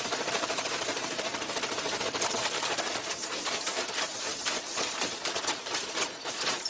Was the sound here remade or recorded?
remade